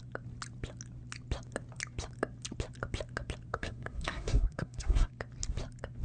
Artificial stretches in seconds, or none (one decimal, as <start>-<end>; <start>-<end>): 3.5-5.1